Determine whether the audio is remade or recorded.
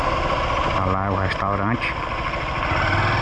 recorded